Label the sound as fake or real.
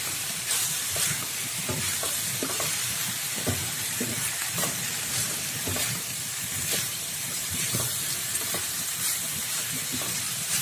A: fake